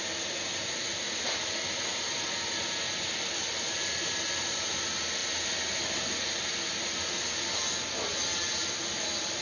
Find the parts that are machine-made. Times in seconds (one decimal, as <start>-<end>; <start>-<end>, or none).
none

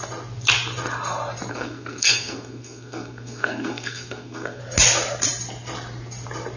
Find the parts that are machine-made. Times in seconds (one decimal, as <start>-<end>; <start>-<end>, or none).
1.5-4.6

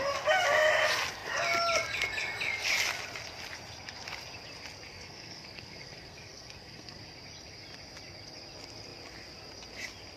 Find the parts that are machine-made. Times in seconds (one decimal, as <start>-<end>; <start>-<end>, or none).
4.9-7.0